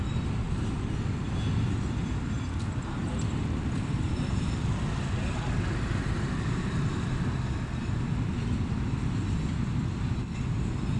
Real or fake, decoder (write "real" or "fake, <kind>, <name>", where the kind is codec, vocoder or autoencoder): real